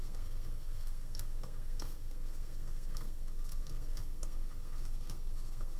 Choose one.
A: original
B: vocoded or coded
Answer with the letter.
B